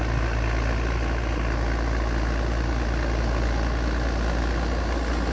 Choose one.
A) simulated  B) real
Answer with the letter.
B